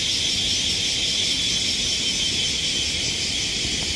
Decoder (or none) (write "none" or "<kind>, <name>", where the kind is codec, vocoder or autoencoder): none